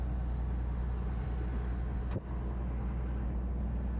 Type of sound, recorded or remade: recorded